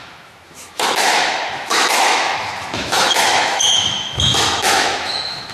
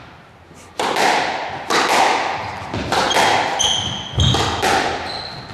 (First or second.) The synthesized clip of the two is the first